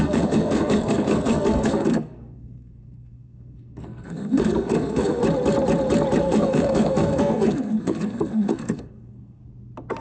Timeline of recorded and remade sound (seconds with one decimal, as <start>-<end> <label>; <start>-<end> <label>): 0.0-5.2 remade; 5.2-6.2 recorded; 6.2-9.4 remade; 9.4-10.0 recorded